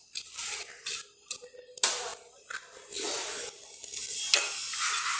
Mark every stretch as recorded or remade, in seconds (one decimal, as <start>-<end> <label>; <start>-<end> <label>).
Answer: 0.0-5.2 recorded